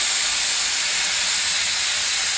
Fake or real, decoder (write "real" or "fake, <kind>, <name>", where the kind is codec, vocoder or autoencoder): real